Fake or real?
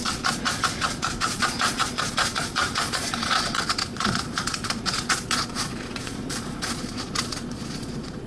fake